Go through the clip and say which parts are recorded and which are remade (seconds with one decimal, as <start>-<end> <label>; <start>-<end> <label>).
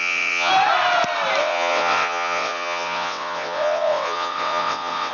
0.0-0.5 remade; 0.5-1.4 recorded; 1.4-5.1 remade